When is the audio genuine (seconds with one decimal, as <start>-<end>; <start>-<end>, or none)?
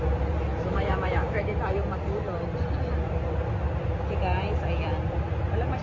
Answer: 0.0-0.5; 1.6-5.8